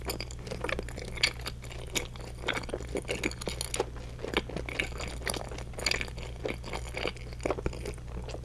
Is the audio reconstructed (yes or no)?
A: no